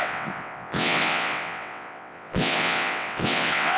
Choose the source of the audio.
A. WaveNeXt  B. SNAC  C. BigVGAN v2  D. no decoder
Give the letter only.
A